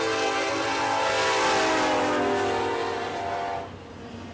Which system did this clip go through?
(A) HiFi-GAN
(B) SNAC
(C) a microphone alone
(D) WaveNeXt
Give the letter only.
C